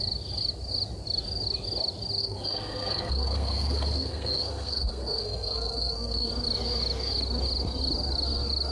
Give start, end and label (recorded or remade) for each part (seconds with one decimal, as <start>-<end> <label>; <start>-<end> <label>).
0.0-2.2 recorded; 2.2-6.3 remade; 6.3-8.7 recorded